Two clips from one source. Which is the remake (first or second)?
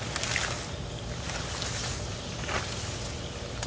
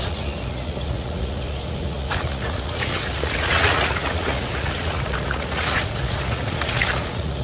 second